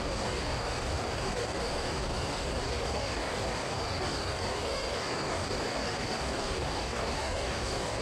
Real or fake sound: fake